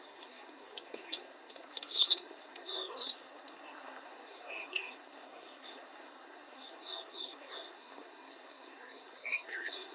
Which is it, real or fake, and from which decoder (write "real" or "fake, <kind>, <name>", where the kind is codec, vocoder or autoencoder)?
fake, codec, SNAC